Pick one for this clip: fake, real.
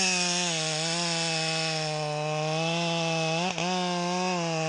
real